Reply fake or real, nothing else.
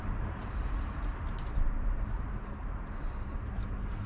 fake